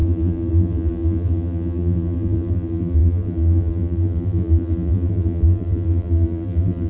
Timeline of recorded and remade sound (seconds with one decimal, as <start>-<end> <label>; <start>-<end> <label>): 0.0-6.9 remade